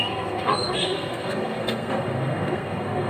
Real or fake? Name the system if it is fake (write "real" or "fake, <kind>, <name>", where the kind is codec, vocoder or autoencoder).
fake, codec, SNAC